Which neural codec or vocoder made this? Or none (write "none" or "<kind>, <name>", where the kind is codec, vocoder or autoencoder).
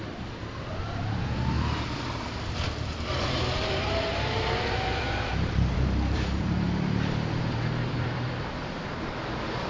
vocoder, BigVGAN v2